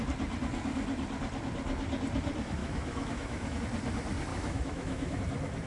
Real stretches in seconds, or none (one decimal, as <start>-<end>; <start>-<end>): 0.0-2.6; 3.6-4.3; 5.2-5.7